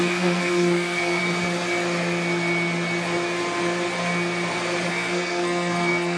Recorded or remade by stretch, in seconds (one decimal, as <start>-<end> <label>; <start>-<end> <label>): 0.0-1.2 remade; 1.2-4.9 recorded; 4.9-6.2 remade